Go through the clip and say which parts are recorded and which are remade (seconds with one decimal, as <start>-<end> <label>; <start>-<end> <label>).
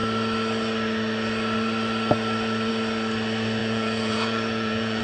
0.0-3.6 recorded; 3.6-5.0 remade